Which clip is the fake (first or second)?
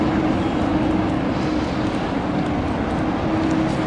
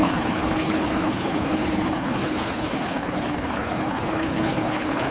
second